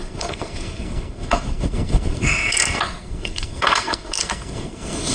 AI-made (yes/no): yes